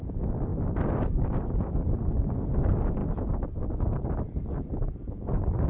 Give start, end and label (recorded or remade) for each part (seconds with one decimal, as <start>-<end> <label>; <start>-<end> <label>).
0.0-5.7 recorded